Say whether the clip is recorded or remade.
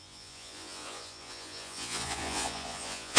remade